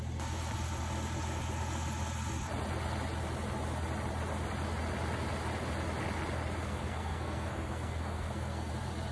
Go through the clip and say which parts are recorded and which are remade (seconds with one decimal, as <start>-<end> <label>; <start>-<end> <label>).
0.0-6.6 recorded; 6.6-8.7 remade; 8.7-9.1 recorded